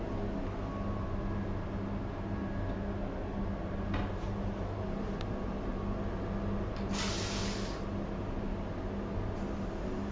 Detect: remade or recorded recorded